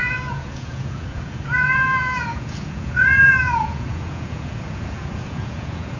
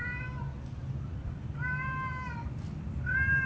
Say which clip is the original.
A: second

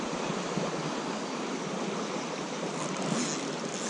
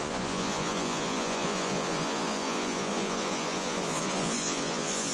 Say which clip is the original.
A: first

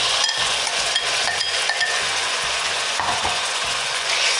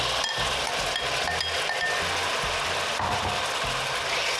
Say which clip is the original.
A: second